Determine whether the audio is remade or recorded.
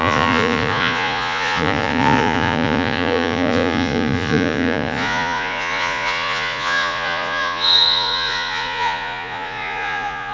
remade